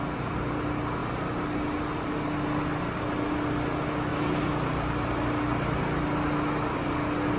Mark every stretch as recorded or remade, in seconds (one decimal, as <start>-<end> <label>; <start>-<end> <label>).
0.0-7.4 recorded